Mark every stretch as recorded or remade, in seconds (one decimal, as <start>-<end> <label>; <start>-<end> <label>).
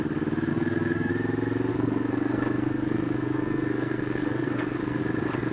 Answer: 0.0-0.5 recorded; 0.5-1.1 remade; 1.1-1.7 recorded; 1.7-5.0 remade; 5.0-5.5 recorded